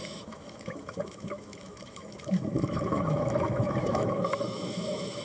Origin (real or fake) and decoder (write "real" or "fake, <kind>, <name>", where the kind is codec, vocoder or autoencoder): fake, autoencoder, DAC-VAE